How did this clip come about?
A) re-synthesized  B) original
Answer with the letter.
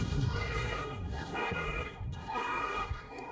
A